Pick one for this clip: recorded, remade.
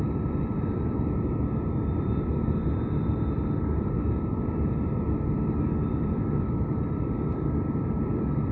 remade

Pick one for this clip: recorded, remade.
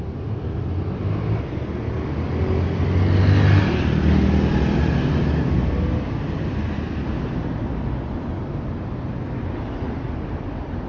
recorded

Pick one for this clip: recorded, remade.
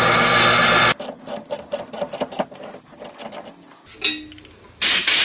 recorded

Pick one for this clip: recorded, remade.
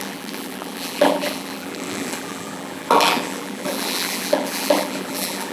remade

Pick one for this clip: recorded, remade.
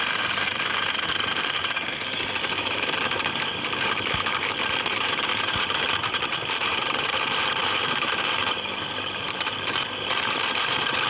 remade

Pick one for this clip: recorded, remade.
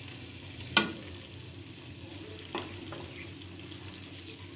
recorded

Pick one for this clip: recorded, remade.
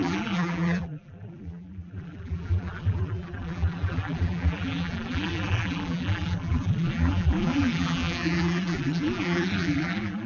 remade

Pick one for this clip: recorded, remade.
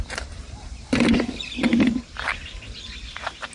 remade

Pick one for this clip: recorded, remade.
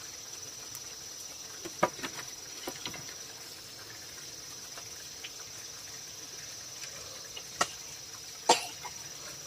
recorded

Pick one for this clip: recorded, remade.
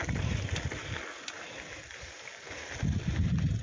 recorded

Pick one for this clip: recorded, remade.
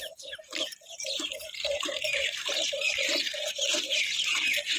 remade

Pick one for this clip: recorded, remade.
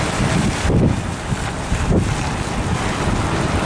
recorded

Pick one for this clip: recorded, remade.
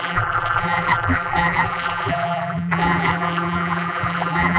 remade